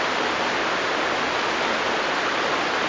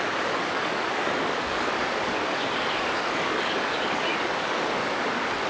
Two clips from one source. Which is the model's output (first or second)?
second